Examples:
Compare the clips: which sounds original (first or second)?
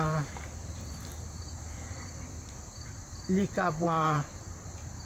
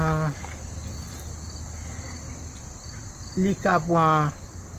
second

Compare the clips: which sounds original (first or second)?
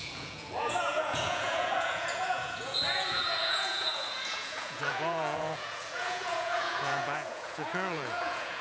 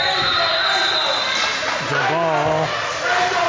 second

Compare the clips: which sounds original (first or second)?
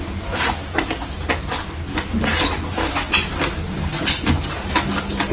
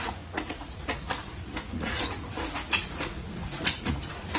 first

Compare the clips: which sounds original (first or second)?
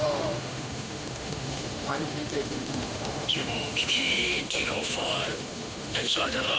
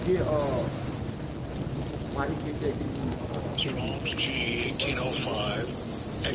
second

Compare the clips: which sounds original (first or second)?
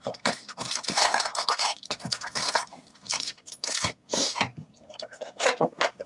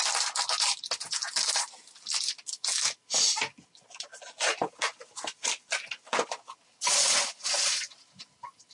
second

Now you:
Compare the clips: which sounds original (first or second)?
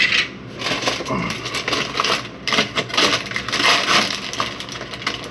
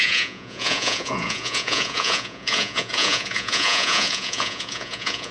first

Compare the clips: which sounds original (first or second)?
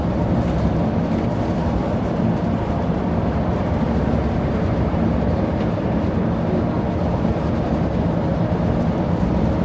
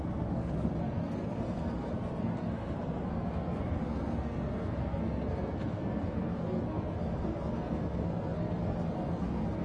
first